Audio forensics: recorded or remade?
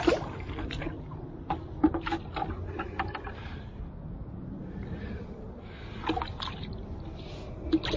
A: recorded